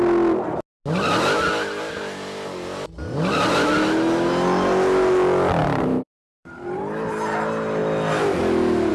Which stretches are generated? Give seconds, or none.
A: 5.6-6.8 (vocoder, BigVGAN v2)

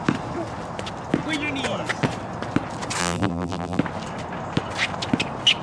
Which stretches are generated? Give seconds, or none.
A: 3.0-3.8 (vocoder, BigVGAN v2)

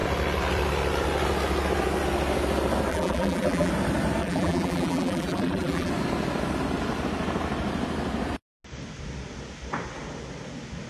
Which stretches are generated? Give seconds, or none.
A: 2.9-3.7 (vocoder, BigVGAN v2); 4.2-5.9

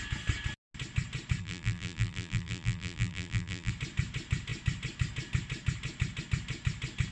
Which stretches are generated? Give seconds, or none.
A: 1.4-3.7 (vocoder, BigVGAN v2)

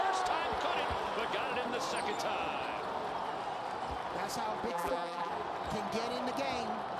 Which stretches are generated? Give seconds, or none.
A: 4.7-5.3 (vocoder, BigVGAN v2)

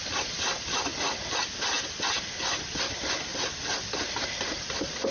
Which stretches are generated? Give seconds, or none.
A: 0.0-0.9 (vocoder, BigVGAN v2); 2.9-3.3; 4.1-5.1

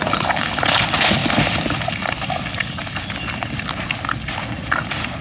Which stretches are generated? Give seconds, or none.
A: 0.0-1.2 (vocoder, BigVGAN v2); 4.3-5.2

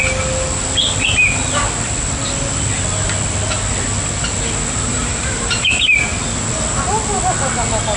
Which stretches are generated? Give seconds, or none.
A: 4.9-6.0 (vocoder, BigVGAN v2)